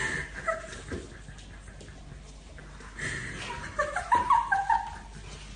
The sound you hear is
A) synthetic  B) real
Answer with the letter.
B